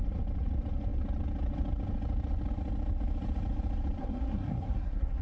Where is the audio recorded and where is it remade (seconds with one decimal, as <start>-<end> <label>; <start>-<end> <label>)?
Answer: 0.0-4.0 recorded; 4.0-5.2 remade